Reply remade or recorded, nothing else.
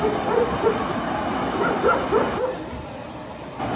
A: recorded